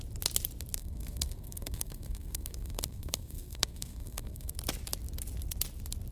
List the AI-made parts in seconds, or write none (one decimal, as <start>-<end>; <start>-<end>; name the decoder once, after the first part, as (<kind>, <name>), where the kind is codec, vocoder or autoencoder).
0.8-4.5 (codec, SNAC)